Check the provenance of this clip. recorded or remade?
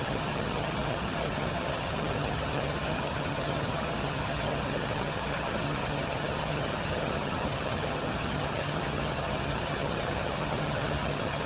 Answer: remade